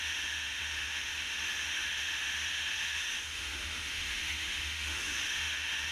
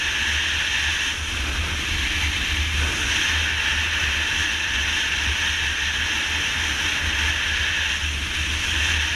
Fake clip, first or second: first